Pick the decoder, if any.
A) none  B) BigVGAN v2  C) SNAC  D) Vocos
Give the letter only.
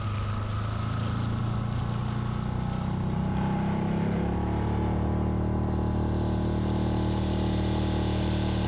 A